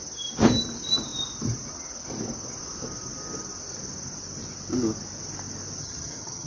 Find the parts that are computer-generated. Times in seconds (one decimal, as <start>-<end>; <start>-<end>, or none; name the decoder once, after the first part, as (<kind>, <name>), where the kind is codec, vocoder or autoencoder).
5.8-6.5 (vocoder, HiFi-GAN)